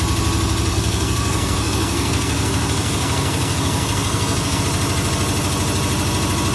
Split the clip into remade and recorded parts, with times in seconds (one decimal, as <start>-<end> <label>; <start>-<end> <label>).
0.0-0.7 recorded; 0.7-4.6 remade; 4.6-6.5 recorded